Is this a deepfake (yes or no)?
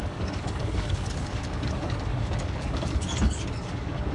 yes